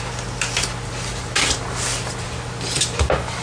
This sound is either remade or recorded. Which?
recorded